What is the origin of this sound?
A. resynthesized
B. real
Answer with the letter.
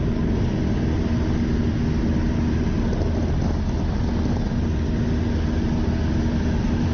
B